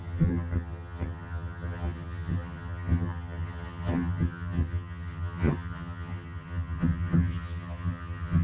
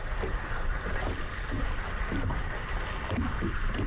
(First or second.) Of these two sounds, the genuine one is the second